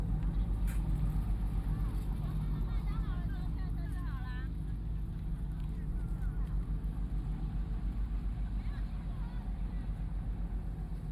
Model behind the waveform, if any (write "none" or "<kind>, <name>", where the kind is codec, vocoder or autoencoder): none